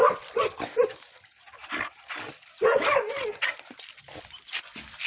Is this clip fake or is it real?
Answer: real